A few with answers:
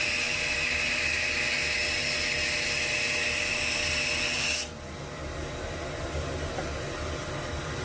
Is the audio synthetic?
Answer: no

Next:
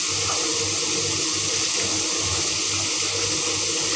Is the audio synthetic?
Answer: no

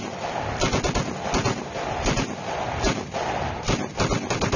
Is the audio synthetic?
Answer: no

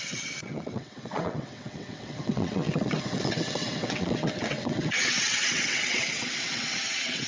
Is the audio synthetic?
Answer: yes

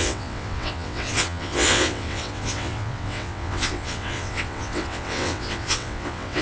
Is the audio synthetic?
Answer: yes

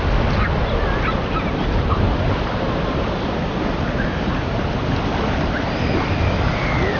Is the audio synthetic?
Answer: no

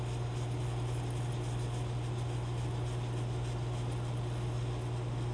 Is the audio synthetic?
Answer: no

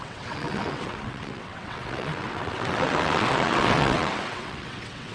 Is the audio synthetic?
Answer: yes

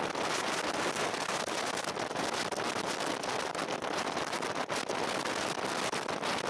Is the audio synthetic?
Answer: no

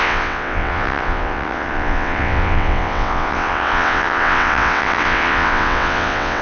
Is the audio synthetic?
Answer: yes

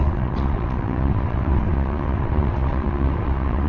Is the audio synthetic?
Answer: yes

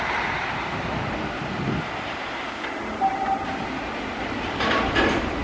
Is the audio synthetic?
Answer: no